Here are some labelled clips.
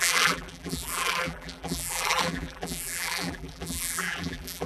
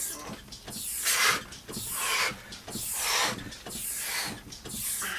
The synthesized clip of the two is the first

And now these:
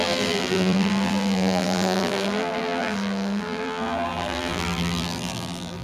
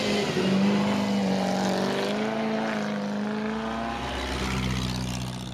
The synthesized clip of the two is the first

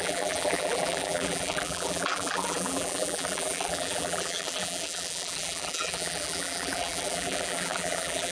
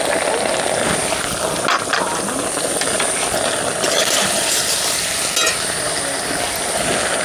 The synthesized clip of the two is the first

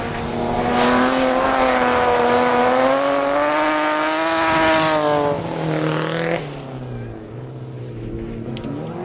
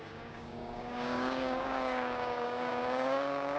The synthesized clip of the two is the second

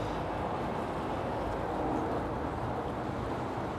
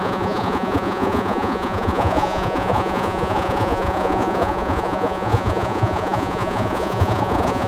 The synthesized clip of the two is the second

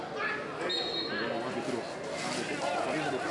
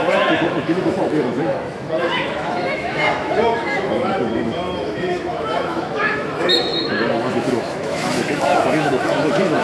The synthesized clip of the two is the second